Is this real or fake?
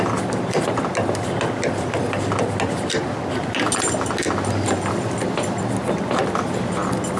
real